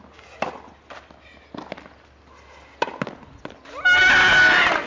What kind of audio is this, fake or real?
real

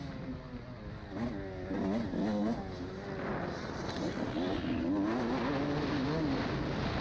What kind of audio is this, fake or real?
real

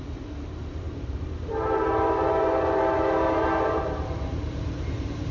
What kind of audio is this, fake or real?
fake